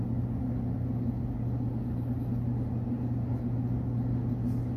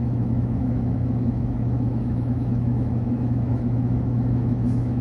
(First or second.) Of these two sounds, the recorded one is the first